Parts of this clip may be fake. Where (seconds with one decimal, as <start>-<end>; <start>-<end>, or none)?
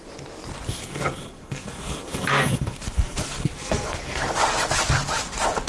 0.8-4.2